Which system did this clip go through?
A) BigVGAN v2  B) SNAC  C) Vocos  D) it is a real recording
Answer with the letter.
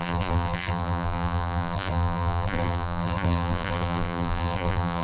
A